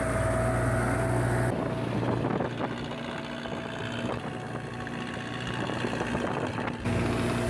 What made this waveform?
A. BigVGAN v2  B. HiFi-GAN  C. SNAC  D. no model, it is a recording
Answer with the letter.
D